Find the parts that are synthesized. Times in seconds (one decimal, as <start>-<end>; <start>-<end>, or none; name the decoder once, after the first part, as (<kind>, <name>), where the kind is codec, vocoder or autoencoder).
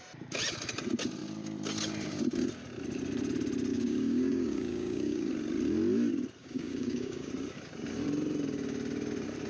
3.7-5.3 (codec, DAC); 6.4-7.3